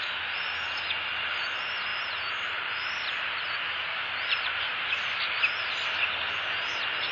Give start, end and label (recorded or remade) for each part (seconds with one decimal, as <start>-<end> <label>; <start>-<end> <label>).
0.0-1.9 recorded; 1.9-5.2 remade; 5.2-7.1 recorded